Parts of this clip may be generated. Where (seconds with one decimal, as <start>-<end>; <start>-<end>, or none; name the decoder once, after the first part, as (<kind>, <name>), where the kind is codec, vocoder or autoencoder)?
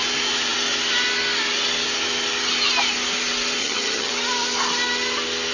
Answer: 3.6-4.1 (vocoder, HiFi-GAN)